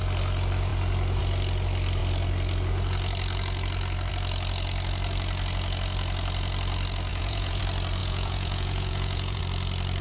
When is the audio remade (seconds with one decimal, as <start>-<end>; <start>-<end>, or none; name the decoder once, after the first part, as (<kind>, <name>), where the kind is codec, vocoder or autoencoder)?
7.1-7.6 (vocoder, Vocos); 8.0-9.4